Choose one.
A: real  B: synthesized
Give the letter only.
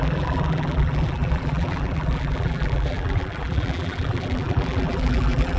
B